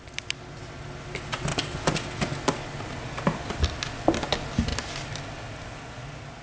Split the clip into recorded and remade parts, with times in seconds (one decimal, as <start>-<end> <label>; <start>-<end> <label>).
0.0-6.4 recorded